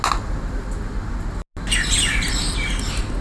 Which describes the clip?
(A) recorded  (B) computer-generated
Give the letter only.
A